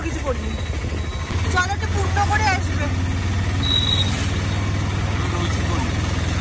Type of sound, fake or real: real